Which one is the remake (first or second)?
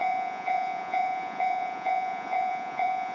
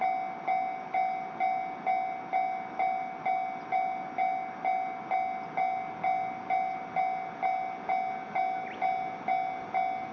first